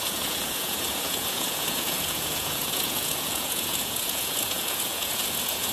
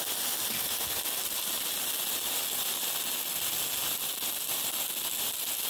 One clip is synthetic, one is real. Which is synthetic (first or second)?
first